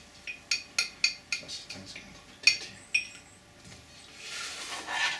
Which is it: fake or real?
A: real